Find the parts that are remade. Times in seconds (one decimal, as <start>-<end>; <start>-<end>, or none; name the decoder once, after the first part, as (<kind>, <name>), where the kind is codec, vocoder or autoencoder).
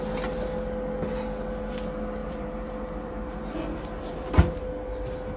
2.2-4.6 (vocoder, BigVGAN v2)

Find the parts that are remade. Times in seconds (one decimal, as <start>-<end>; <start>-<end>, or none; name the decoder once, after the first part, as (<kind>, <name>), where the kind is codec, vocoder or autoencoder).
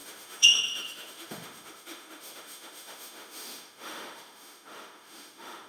0.0-5.7 (autoencoder, DAC-VAE)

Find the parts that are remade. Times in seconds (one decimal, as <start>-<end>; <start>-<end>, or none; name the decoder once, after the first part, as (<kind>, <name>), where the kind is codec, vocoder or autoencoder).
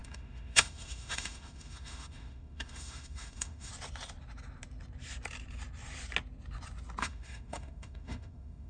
0.0-3.7 (autoencoder, DAC-VAE); 7.0-8.7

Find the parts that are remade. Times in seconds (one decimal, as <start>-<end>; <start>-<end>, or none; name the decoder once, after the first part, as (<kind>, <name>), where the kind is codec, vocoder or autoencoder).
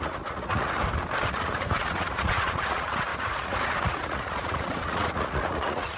0.0-0.8 (vocoder, Vocos); 1.3-6.0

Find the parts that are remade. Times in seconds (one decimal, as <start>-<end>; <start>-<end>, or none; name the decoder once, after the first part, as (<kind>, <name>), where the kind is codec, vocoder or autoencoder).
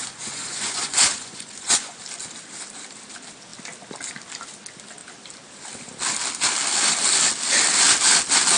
0.0-2.0 (vocoder, Vocos)